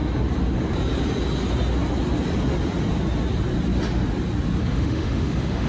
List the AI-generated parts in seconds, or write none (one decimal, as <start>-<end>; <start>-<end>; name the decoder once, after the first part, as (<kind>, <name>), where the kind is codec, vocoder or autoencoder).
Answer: 4.6-5.7 (autoencoder, DAC-VAE)